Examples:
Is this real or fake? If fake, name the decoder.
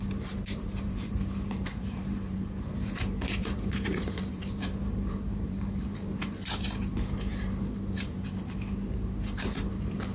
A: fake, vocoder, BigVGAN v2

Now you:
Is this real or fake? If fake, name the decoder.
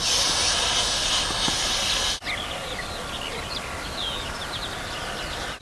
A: real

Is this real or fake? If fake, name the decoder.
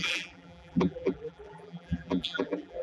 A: fake, vocoder, BigVGAN v2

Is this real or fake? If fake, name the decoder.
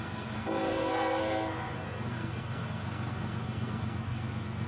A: fake, codec, SNAC